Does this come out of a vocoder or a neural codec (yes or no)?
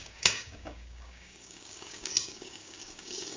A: yes